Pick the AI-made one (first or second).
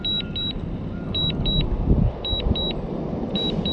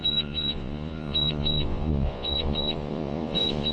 second